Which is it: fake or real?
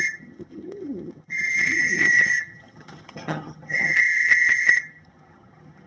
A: fake